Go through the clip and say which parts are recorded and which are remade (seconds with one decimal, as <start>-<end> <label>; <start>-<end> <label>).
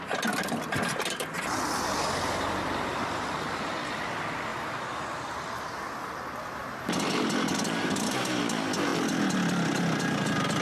0.0-2.9 recorded; 2.9-3.7 remade; 3.7-6.6 recorded; 6.6-8.4 remade; 8.4-10.6 recorded